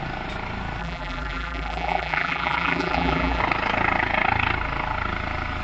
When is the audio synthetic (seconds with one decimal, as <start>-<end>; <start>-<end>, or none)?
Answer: 0.8-3.4